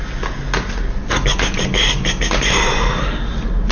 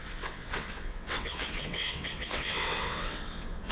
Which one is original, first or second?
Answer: first